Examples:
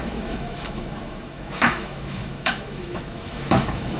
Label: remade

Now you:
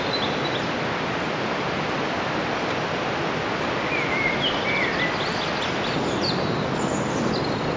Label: recorded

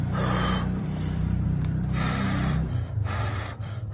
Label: remade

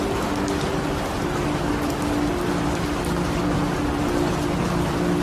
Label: recorded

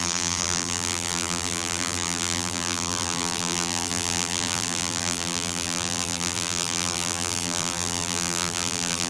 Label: remade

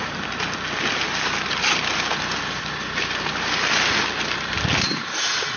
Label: recorded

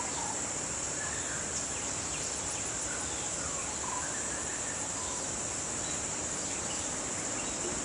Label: recorded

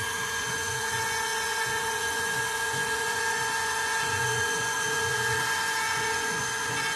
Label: remade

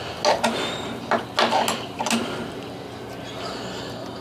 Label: recorded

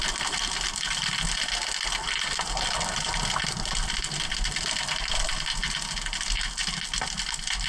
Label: recorded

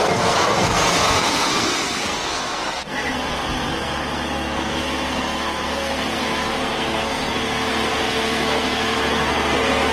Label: remade